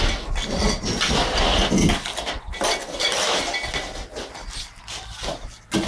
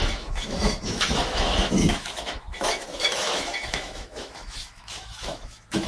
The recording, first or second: first